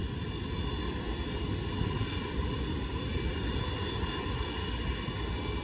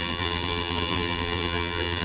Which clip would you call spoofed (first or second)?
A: second